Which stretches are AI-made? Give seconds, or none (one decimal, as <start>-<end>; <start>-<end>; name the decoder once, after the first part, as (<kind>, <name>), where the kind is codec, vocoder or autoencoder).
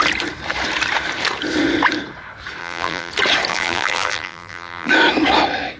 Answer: 2.6-3.1 (vocoder, BigVGAN v2); 3.5-4.9